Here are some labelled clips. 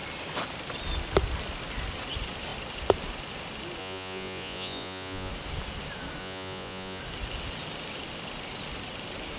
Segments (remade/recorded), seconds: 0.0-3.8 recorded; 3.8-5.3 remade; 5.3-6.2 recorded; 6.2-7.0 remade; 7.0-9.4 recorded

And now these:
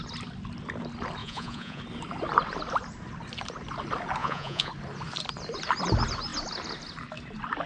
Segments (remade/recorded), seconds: 0.0-1.2 recorded; 1.2-1.8 remade; 1.8-4.2 recorded; 4.2-4.7 remade; 4.7-7.7 recorded